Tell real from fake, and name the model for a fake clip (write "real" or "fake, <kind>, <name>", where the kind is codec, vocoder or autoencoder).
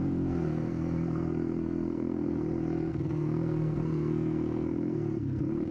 fake, codec, SNAC